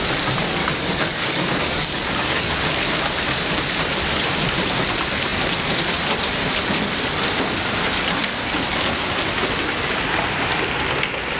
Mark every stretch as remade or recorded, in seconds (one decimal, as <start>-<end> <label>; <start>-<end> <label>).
0.0-0.6 recorded; 0.6-2.5 remade; 2.5-11.4 recorded